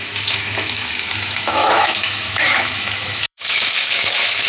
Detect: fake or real fake